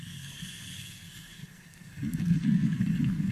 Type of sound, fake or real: fake